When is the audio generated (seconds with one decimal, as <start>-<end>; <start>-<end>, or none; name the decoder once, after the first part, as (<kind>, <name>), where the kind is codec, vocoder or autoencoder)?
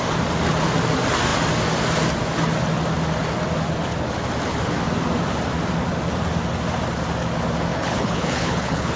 7.7-9.0 (codec, HILCodec)